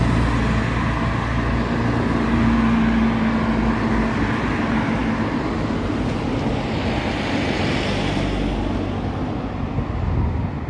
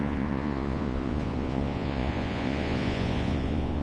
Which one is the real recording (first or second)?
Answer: first